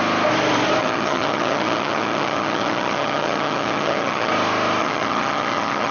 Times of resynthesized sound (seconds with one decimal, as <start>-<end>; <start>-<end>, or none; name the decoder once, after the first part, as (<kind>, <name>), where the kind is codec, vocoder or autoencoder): 0.8-4.3 (vocoder, HiFi-GAN); 4.8-5.9